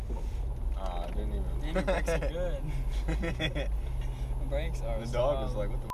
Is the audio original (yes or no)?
yes